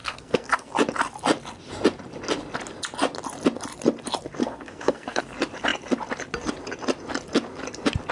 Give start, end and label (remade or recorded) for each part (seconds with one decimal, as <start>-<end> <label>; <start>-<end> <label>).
0.0-0.7 remade; 0.7-4.4 recorded; 4.4-5.2 remade; 5.2-8.1 recorded